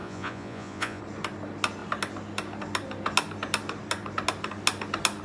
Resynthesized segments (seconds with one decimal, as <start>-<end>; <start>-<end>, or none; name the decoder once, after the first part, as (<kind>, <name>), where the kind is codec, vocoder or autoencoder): 0.0-1.0 (vocoder, Vocos)